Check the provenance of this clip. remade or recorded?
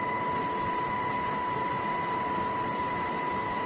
recorded